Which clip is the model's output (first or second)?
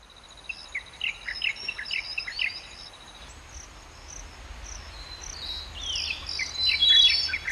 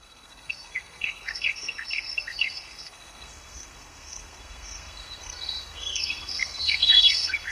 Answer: second